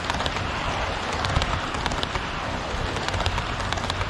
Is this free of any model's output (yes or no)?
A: yes